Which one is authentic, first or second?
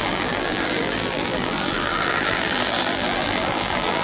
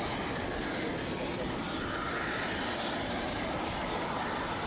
second